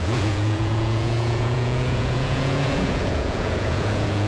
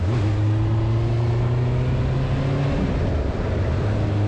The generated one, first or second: first